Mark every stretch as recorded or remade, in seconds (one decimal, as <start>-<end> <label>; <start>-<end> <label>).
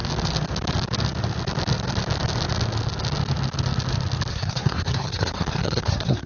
0.0-4.3 recorded; 4.3-6.3 remade